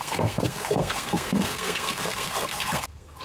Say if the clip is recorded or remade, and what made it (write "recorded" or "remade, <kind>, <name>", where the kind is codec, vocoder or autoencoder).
remade, codec, SNAC